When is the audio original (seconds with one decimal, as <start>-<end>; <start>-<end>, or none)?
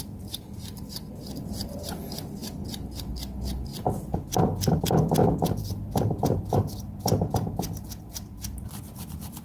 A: 0.0-9.4